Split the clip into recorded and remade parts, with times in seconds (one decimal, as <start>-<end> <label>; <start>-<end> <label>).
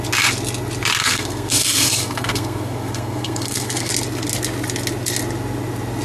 0.0-1.0 recorded; 1.0-3.9 remade; 3.9-6.0 recorded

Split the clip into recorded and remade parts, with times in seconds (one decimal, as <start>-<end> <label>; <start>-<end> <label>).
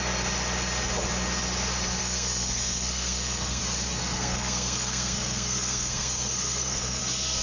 0.0-2.0 recorded; 2.0-3.6 remade; 3.6-4.0 recorded; 4.0-7.0 remade; 7.0-7.4 recorded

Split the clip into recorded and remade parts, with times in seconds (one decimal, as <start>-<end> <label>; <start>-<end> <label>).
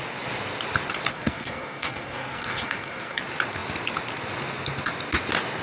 0.0-1.1 recorded; 1.1-3.2 remade; 3.2-5.6 recorded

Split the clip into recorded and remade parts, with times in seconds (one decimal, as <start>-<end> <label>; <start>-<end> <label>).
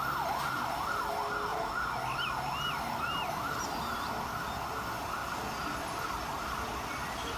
0.0-7.4 recorded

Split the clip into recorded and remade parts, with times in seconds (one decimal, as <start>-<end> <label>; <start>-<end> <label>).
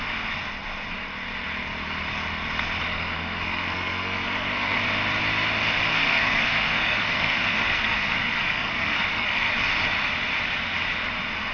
0.0-2.9 recorded; 2.9-4.8 remade; 4.8-5.9 recorded; 5.9-9.5 remade; 9.5-11.5 recorded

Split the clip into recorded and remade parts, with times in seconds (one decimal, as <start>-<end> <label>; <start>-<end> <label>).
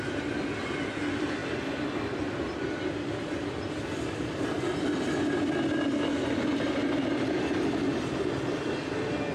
0.0-9.3 recorded